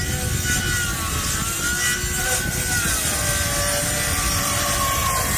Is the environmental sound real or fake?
real